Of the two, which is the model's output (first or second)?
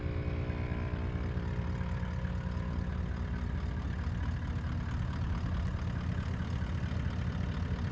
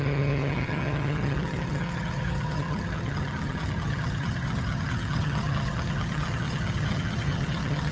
second